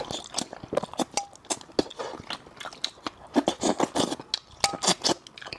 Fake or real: real